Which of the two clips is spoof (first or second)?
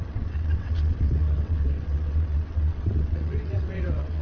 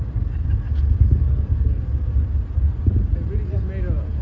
first